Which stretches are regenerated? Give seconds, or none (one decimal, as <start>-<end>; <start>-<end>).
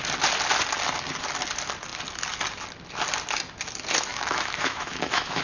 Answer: 4.1-5.4